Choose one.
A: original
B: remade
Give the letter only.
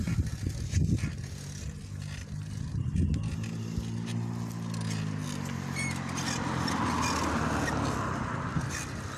A